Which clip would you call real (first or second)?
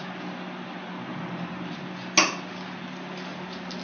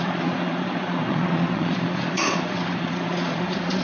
first